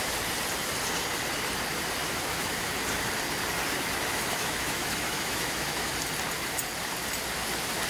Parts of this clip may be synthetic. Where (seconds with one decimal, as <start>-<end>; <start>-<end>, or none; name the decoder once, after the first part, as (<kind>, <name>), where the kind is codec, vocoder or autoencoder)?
2.0-2.7 (autoencoder, DAC-VAE); 4.1-5.9